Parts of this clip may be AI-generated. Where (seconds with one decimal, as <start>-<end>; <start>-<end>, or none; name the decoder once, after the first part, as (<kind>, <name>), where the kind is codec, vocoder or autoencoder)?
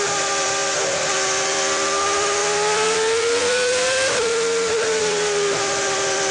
0.0-0.6 (vocoder, BigVGAN v2); 1.4-4.3; 5.0-6.3